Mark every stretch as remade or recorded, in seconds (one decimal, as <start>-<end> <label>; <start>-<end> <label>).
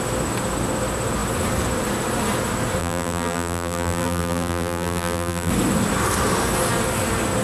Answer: 0.0-2.8 recorded; 2.8-5.5 remade; 5.5-7.4 recorded